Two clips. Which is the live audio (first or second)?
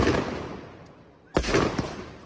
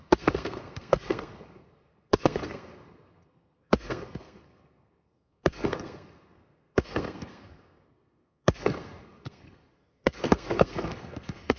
first